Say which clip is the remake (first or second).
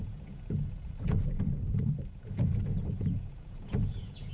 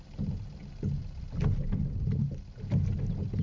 first